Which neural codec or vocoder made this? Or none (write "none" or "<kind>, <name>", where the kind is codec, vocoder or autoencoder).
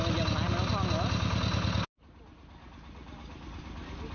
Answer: none